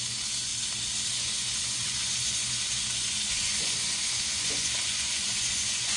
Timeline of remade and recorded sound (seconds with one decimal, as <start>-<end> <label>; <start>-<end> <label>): 0.0-0.5 remade; 0.5-1.1 recorded; 1.1-6.0 remade